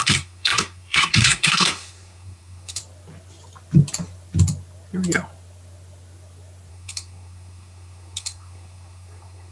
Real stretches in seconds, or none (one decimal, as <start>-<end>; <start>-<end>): 2.8-6.7